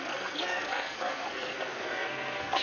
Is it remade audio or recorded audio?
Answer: remade